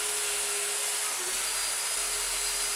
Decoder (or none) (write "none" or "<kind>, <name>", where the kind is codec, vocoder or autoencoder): none